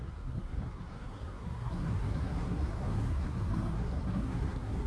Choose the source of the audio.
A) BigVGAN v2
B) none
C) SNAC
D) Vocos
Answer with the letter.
C